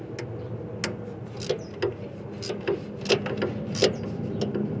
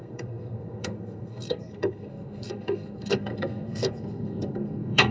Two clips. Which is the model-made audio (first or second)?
second